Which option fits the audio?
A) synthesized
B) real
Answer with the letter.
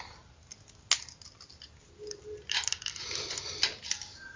B